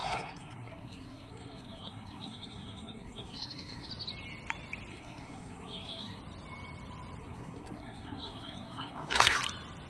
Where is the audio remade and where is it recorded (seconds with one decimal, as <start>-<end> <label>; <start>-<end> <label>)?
0.0-3.9 remade; 3.9-4.9 recorded; 4.9-6.2 remade; 6.2-7.2 recorded; 7.2-9.4 remade; 9.4-9.9 recorded